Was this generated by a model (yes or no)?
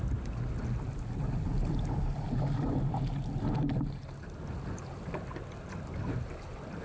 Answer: no